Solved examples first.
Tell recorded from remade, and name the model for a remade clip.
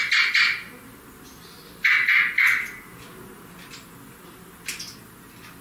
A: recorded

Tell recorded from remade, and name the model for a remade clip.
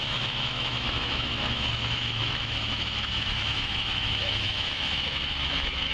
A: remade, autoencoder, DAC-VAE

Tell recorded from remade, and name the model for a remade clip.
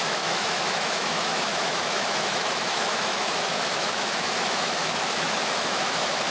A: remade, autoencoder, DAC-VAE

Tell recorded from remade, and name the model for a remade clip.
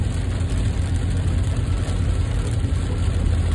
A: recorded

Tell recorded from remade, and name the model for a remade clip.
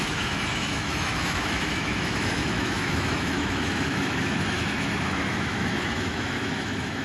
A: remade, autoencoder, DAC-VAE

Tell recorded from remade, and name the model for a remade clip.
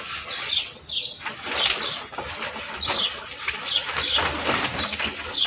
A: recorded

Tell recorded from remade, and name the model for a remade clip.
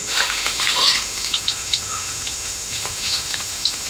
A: remade, autoencoder, DAC-VAE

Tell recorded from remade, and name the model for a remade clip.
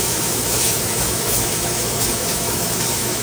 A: remade, autoencoder, DAC-VAE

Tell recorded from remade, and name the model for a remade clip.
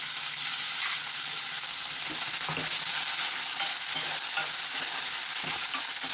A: recorded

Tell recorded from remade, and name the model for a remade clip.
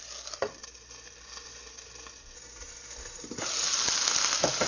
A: recorded